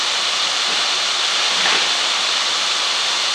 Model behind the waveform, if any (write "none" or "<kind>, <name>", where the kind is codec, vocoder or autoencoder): none